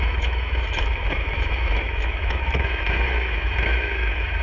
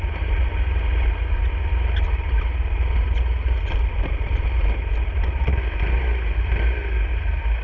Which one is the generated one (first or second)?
first